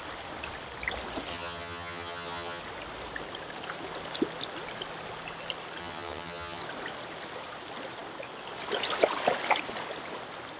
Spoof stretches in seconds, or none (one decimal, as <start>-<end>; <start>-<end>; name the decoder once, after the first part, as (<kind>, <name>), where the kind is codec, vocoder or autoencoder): 1.3-2.6 (vocoder, HiFi-GAN); 5.8-6.6